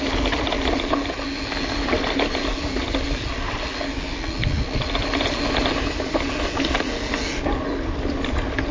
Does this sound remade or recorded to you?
recorded